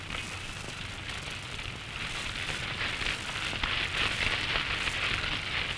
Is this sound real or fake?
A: real